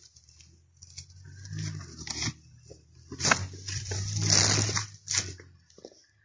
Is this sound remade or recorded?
recorded